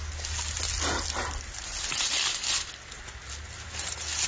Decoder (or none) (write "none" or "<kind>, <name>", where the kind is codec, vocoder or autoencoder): none